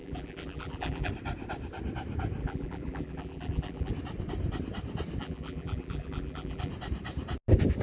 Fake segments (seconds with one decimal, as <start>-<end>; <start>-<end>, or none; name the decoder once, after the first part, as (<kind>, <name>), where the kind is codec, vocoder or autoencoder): 0.0-1.1 (vocoder, BigVGAN v2); 2.4-3.9; 5.2-6.7